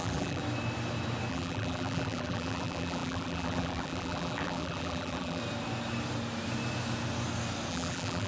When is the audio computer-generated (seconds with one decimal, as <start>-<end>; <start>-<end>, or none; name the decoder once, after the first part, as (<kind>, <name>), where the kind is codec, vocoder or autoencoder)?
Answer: 0.0-0.4 (vocoder, BigVGAN v2); 1.3-5.4; 7.7-8.3